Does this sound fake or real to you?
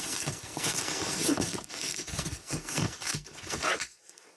fake